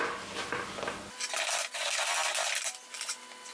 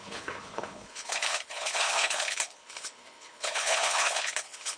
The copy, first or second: second